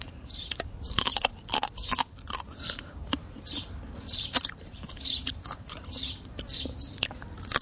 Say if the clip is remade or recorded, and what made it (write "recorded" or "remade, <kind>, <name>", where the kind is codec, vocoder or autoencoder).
remade, vocoder, BigVGAN v2